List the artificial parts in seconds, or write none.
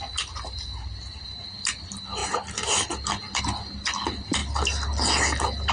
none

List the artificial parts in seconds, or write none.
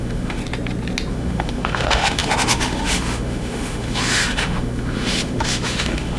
0.0-0.4 (autoencoder, DAC-VAE); 1.1-6.2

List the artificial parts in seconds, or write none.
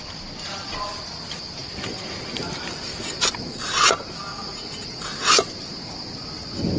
4.3-5.0 (vocoder, Vocos)